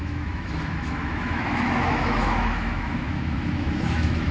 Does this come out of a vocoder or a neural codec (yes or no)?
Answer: yes